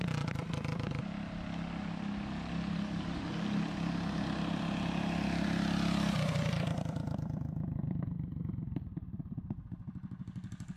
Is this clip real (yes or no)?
yes